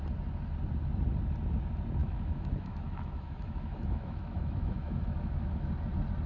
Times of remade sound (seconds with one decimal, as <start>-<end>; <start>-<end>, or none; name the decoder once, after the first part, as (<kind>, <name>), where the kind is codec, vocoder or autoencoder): 2.0-5.7 (autoencoder, DAC-VAE)